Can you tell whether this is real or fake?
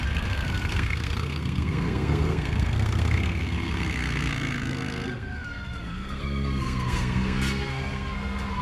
fake